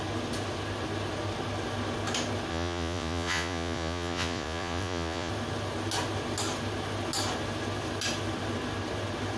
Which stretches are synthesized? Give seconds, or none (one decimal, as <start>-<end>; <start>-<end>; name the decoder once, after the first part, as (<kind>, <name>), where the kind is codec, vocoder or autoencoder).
2.5-5.3 (vocoder, Vocos)